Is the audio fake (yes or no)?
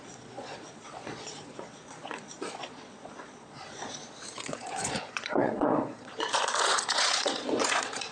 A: yes